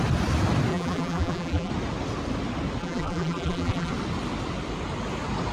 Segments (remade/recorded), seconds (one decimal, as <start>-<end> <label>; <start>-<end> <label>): 0.0-0.7 recorded; 0.7-1.7 remade; 1.7-2.8 recorded; 2.8-3.9 remade; 3.9-5.5 recorded

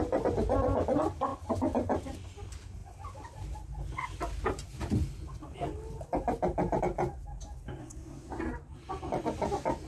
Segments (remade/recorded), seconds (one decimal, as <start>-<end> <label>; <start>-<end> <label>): 0.0-7.8 recorded; 7.8-8.4 remade; 8.4-9.9 recorded